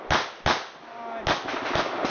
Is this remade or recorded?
recorded